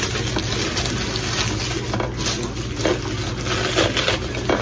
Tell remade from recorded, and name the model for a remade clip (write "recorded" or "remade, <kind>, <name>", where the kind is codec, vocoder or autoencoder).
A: recorded